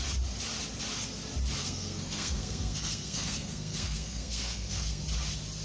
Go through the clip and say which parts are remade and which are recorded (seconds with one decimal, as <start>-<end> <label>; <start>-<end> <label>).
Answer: 0.0-1.6 recorded; 1.6-5.0 remade; 5.0-5.6 recorded